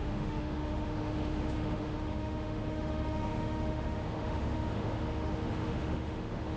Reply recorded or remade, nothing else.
remade